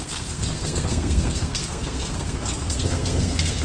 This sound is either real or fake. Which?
fake